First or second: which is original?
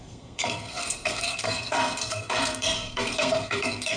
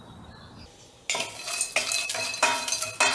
second